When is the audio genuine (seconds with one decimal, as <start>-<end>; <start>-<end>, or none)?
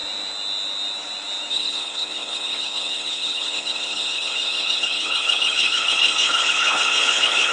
0.0-1.5